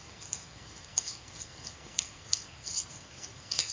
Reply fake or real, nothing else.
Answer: fake